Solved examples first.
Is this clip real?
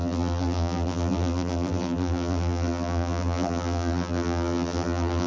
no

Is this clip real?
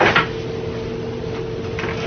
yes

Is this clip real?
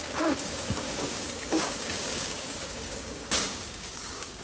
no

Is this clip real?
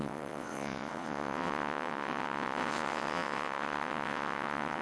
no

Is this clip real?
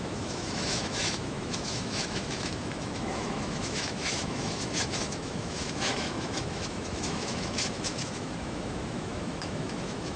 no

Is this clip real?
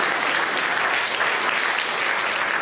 yes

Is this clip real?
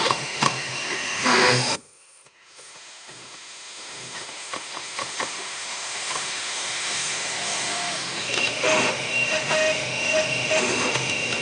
no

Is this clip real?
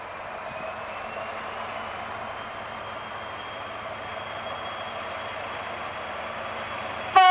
yes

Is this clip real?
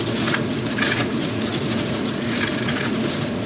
no